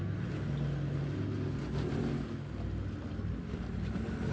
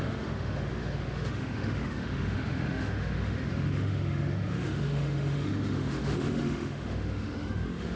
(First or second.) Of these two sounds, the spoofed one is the second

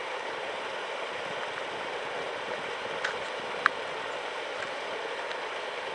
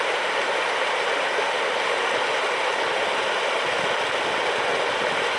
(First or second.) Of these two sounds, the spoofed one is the first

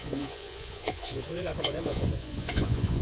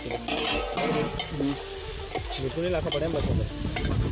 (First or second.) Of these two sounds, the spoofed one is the first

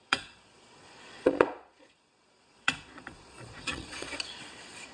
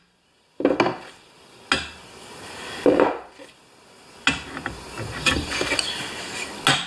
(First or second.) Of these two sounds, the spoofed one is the first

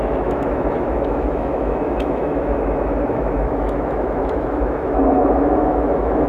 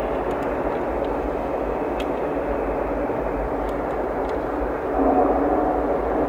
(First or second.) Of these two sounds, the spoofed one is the first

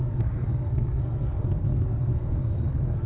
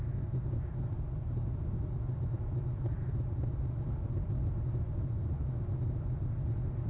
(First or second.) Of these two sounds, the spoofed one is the first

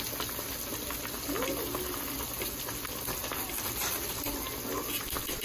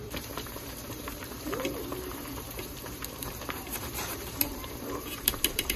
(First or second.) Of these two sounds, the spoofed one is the second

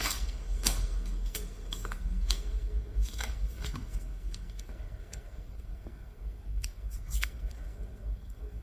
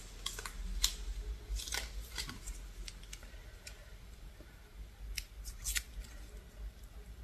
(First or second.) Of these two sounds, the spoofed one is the first